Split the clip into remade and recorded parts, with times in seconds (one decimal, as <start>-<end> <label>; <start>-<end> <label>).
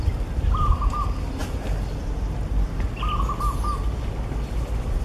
0.0-5.0 recorded